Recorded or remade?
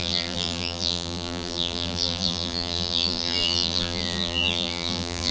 remade